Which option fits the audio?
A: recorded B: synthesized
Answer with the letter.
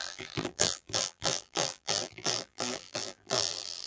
B